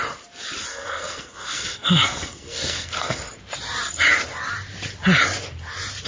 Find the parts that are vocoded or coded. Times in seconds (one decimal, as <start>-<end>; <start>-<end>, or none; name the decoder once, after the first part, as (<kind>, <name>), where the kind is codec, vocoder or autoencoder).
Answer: 0.7-3.2 (codec, SNAC)